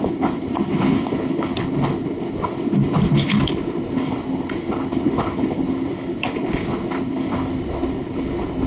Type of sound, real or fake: fake